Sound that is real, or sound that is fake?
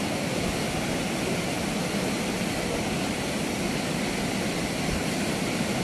real